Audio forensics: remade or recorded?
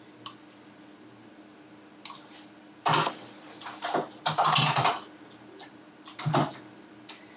recorded